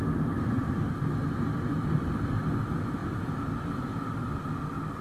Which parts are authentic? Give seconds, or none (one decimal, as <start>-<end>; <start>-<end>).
0.0-0.6; 2.4-3.0; 4.0-5.0